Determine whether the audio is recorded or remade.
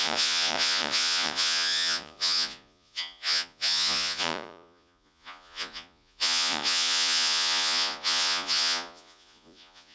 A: remade